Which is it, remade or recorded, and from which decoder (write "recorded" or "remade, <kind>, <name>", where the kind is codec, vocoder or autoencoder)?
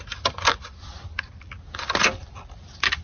recorded